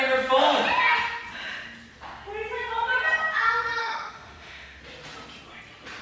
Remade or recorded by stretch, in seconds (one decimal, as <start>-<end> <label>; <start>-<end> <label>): 0.0-3.8 recorded; 3.8-4.8 remade; 4.8-6.0 recorded